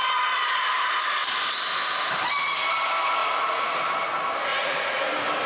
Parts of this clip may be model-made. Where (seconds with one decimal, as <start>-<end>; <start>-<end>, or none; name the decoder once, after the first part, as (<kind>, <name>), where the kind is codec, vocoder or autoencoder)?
3.2-3.7 (vocoder, Vocos); 4.5-5.0